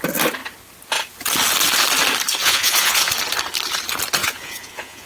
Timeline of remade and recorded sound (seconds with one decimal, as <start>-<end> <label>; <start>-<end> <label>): 0.0-2.4 recorded; 2.4-3.1 remade; 3.1-4.2 recorded; 4.2-5.1 remade